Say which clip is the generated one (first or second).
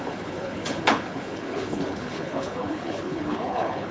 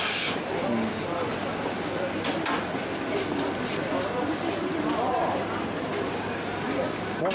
first